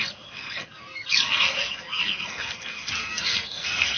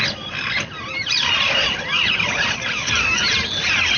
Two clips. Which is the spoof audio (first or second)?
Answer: first